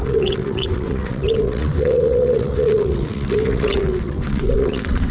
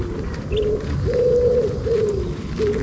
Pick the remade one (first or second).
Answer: first